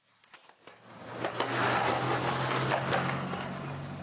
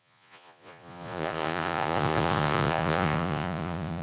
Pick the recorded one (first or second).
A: first